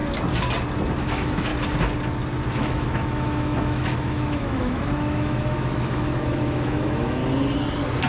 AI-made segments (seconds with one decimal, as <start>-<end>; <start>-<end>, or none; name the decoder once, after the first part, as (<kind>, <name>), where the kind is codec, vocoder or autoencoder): 1.0-1.5 (autoencoder, DAC-VAE); 2.5-7.2